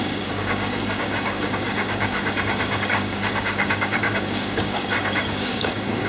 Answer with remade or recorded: remade